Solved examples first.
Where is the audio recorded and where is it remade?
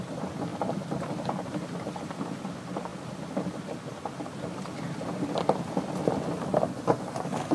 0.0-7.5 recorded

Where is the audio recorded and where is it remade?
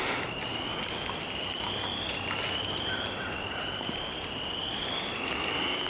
0.0-5.9 recorded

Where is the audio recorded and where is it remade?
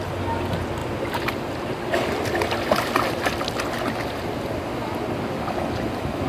0.0-6.3 recorded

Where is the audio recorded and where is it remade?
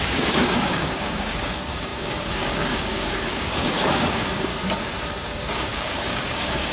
0.0-4.5 remade; 4.5-5.2 recorded; 5.2-6.7 remade